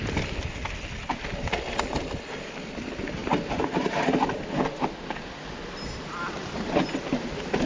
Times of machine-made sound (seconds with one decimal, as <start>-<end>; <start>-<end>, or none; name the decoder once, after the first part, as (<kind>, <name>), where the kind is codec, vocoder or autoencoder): none